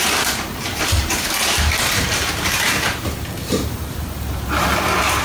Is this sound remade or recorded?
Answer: remade